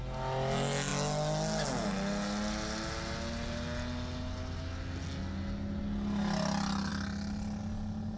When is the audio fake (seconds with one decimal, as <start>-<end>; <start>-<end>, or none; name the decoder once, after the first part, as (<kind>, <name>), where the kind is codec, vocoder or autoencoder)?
none